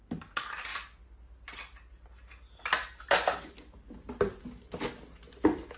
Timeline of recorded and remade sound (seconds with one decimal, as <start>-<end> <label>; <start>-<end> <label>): 0.0-5.8 recorded